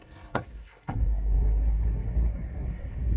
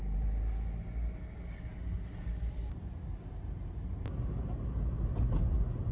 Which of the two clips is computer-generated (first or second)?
first